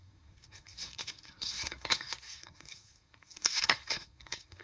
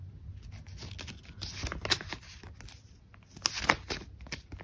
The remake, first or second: first